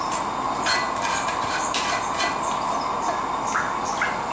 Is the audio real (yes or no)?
yes